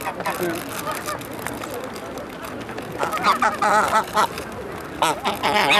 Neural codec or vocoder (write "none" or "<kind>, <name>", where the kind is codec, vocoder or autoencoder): none